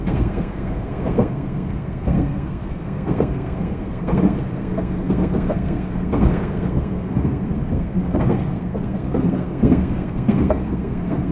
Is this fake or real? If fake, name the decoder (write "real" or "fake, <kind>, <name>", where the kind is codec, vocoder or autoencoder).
fake, codec, SNAC